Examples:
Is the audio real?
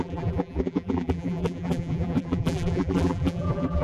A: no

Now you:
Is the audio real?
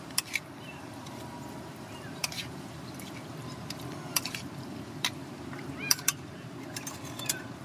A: no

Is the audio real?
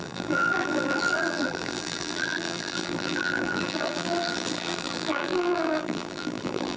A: no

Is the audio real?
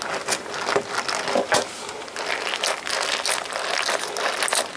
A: yes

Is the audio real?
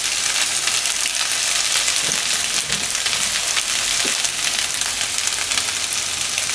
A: yes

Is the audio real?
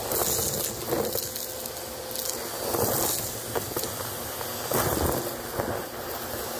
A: yes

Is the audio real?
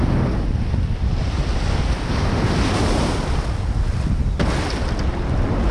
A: yes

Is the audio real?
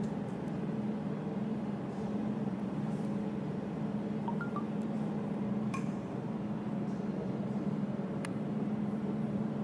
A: no